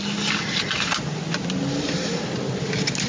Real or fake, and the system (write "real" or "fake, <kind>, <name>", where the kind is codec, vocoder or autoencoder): real